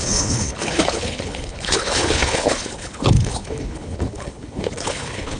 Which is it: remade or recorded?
remade